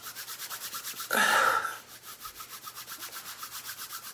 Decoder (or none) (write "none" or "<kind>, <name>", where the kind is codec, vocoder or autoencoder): none